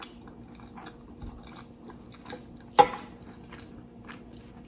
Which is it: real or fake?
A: real